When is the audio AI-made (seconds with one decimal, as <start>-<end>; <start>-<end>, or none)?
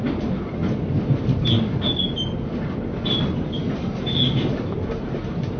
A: 0.0-0.6; 4.0-5.6